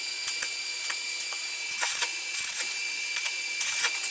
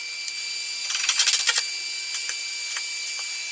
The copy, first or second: first